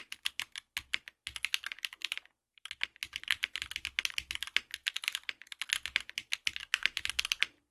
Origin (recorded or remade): recorded